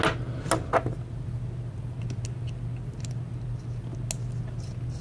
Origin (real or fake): real